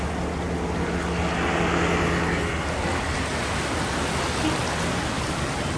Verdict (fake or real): real